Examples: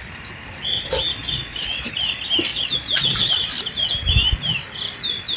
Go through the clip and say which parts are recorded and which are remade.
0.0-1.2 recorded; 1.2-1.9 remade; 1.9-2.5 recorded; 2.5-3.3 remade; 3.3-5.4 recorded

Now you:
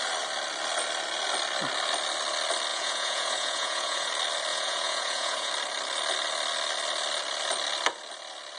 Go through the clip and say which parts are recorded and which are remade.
0.0-2.7 recorded; 2.7-4.1 remade; 4.1-4.5 recorded; 4.5-5.5 remade; 5.5-8.6 recorded

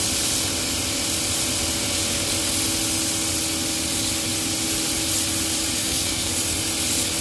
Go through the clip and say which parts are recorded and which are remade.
0.0-5.8 recorded; 5.8-6.3 remade; 6.3-7.2 recorded

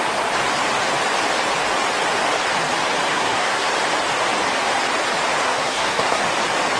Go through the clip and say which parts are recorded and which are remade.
0.0-3.1 recorded; 3.1-3.7 remade; 3.7-5.4 recorded; 5.4-6.2 remade; 6.2-6.8 recorded

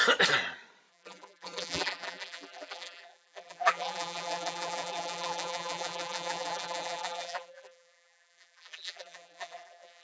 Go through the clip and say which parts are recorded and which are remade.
0.0-0.9 recorded; 0.9-10.0 remade

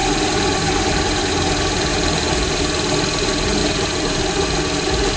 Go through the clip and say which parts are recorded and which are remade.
0.0-1.3 remade; 1.3-1.9 recorded; 1.9-2.6 remade; 2.6-3.6 recorded; 3.6-4.2 remade; 4.2-5.2 recorded